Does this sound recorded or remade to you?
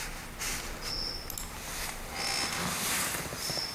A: recorded